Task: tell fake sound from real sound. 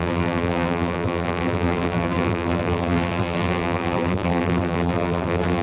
fake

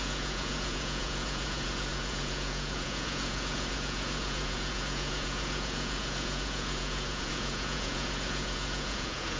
fake